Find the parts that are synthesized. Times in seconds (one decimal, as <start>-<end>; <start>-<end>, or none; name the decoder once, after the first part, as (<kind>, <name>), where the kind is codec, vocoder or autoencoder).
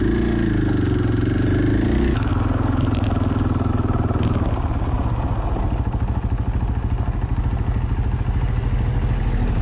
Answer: none